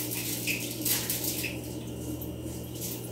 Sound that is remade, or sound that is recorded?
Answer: recorded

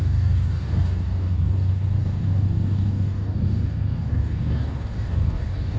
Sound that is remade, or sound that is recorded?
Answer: remade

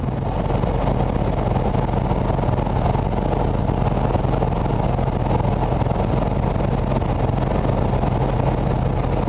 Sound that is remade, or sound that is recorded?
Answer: recorded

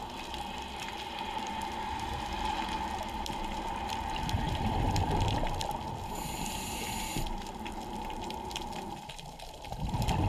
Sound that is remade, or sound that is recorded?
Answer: remade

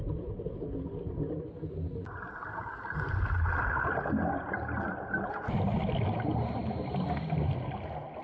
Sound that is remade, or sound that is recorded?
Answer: recorded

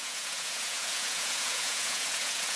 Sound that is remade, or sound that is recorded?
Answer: remade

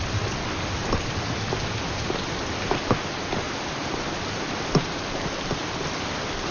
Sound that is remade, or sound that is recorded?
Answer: recorded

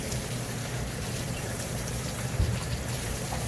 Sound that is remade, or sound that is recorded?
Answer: remade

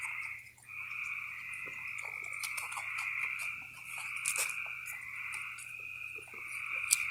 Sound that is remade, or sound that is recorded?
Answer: recorded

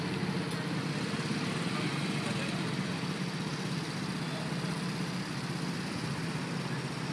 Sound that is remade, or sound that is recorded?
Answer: recorded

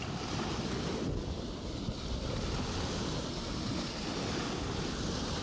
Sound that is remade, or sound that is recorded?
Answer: recorded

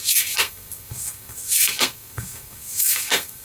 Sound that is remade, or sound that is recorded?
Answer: remade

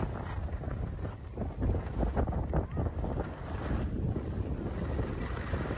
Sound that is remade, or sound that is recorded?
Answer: recorded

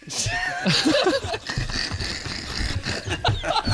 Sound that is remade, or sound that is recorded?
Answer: recorded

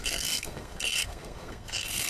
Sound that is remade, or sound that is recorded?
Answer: remade